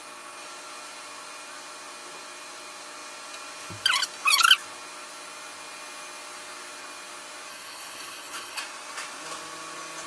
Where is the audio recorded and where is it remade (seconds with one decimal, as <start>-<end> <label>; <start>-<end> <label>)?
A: 0.0-7.5 recorded; 7.5-8.6 remade; 8.6-10.1 recorded